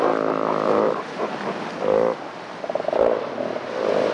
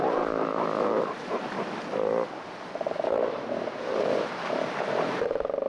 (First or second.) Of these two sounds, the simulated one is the second